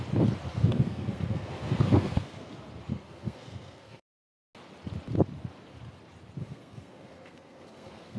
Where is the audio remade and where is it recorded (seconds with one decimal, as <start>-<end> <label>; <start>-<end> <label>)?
0.0-0.5 recorded; 0.5-2.5 remade; 2.5-2.9 recorded; 2.9-4.1 remade; 4.1-6.4 recorded; 6.4-8.2 remade